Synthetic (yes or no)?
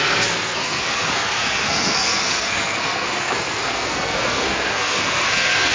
yes